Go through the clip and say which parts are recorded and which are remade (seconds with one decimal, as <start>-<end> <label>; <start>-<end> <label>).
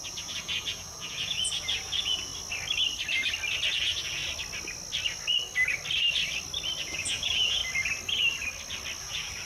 0.0-2.3 remade; 2.3-3.7 recorded; 3.7-4.2 remade; 4.2-6.8 recorded; 6.8-7.6 remade; 7.6-9.0 recorded; 9.0-9.5 remade